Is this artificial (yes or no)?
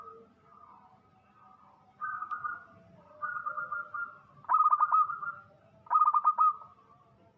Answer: no